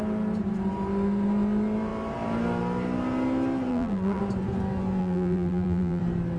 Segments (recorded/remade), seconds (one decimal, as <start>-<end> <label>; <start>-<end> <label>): 0.0-3.7 recorded; 3.7-4.2 remade; 4.2-5.0 recorded; 5.0-6.0 remade; 6.0-6.4 recorded